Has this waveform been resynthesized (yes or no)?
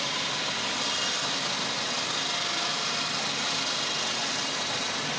no